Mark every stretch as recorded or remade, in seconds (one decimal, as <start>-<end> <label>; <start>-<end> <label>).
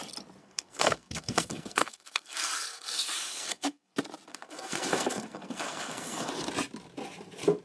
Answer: 0.0-0.4 recorded; 0.4-3.9 remade; 3.9-4.3 recorded; 4.3-6.3 remade; 6.3-7.6 recorded